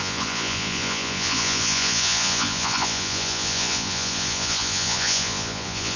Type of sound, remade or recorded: remade